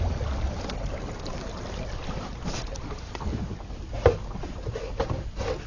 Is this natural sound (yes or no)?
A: yes